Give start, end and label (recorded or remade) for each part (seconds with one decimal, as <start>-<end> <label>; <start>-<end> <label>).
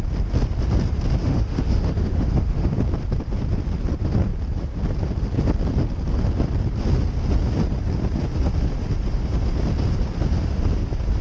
0.0-1.2 recorded; 1.2-2.7 remade; 2.7-11.2 recorded